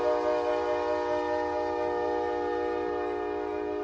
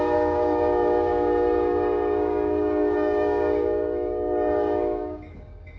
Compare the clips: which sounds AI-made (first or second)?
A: second